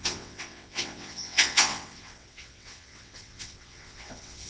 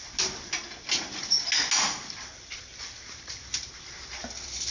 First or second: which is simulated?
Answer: first